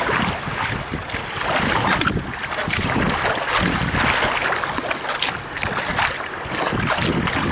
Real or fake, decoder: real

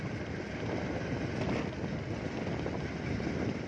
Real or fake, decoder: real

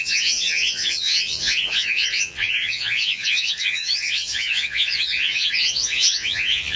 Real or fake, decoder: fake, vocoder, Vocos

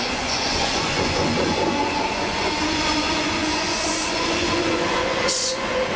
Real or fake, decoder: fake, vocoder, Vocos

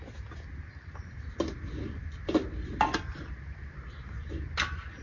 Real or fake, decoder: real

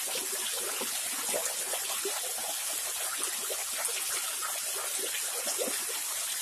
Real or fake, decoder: real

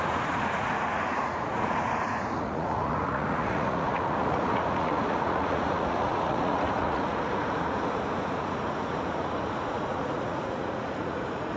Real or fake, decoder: fake, vocoder, Vocos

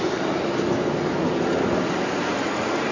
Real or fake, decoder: real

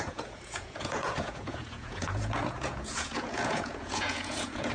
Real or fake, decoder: fake, vocoder, Vocos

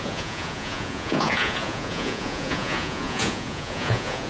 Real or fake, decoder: fake, vocoder, Vocos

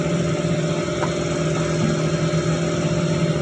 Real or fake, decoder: real